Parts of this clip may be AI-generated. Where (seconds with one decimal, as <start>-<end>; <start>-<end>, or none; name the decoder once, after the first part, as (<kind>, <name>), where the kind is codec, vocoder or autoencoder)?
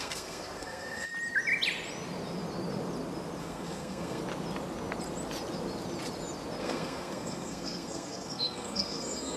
0.0-1.1 (codec, SNAC); 3.4-4.2; 6.6-9.4